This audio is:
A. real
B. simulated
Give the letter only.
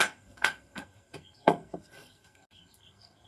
B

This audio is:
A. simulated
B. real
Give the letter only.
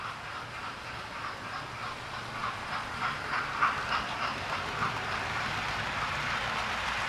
B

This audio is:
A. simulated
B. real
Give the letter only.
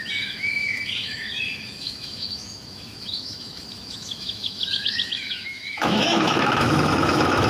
A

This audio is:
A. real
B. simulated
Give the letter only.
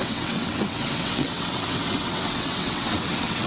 B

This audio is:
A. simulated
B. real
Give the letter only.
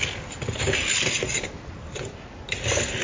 B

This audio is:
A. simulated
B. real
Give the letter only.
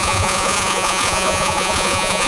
A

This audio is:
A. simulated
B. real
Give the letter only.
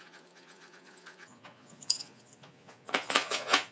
A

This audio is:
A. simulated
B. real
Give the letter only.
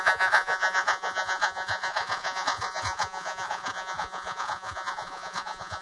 A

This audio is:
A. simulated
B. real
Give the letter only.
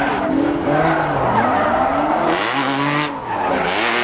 B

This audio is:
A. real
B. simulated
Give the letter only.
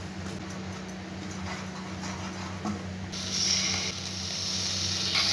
A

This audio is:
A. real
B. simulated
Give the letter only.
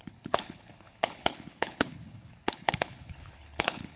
B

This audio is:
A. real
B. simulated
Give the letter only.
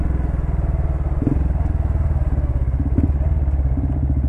A